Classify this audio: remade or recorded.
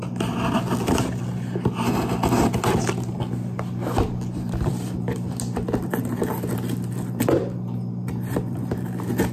recorded